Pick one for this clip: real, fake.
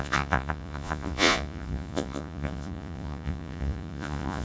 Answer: fake